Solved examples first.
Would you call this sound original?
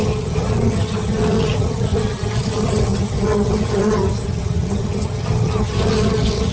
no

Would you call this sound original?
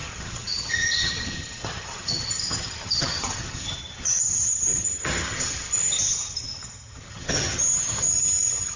no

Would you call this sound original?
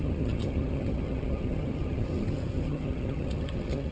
no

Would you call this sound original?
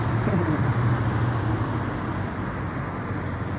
yes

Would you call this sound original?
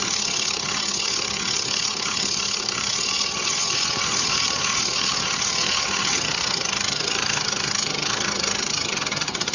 no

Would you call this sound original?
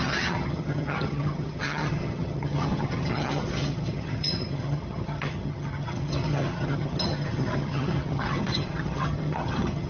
no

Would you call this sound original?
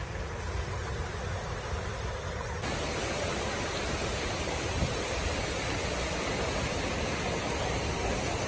yes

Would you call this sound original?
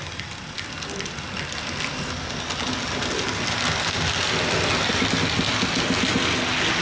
yes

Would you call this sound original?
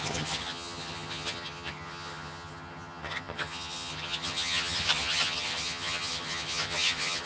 no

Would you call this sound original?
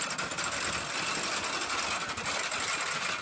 yes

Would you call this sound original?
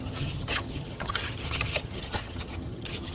no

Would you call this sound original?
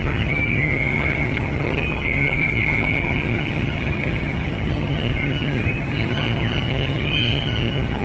no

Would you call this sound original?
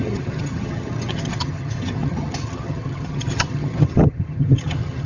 no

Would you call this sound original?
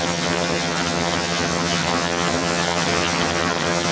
no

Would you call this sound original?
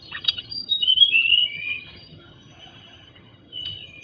no